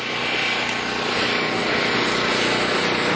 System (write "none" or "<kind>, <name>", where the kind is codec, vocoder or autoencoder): none